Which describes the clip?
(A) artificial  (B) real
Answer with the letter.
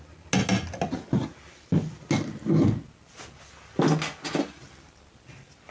B